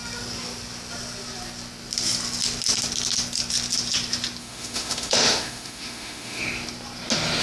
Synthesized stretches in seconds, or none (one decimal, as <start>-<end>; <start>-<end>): 4.4-6.4